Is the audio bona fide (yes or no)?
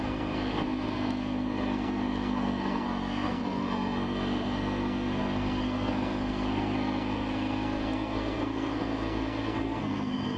no